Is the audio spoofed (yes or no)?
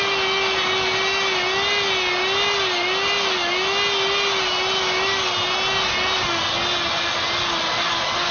no